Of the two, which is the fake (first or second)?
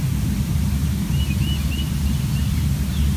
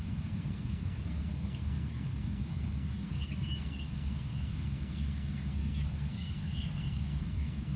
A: second